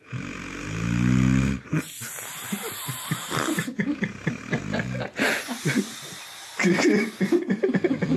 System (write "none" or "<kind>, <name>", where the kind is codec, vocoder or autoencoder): none